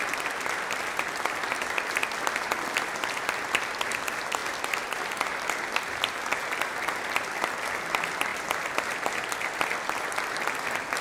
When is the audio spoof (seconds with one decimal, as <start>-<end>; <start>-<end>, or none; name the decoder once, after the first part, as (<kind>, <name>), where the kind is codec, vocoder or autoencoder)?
none